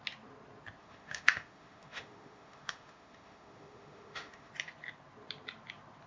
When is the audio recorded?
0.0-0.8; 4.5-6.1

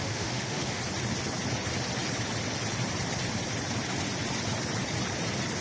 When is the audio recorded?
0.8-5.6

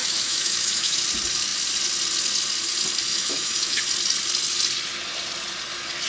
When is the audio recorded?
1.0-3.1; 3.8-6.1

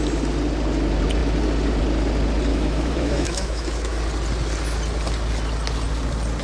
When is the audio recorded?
0.0-2.5; 4.0-6.4

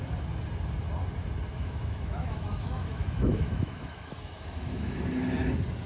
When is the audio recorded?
0.0-1.5; 5.0-5.9

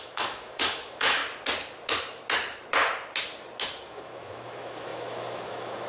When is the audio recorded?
1.2-3.9

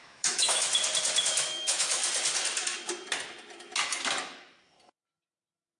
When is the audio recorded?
0.7-1.2; 2.0-5.8

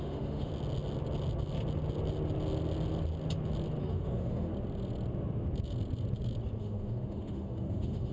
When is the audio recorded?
0.5-3.8; 4.5-6.6